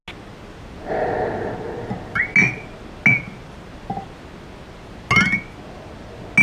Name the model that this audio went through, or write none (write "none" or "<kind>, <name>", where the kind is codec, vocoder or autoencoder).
none